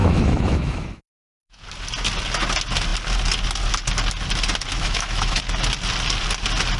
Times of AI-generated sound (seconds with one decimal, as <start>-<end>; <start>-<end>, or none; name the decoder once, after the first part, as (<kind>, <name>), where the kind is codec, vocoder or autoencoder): 0.0-1.6 (autoencoder, DAC-VAE); 4.7-5.4